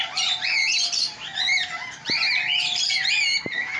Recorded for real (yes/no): yes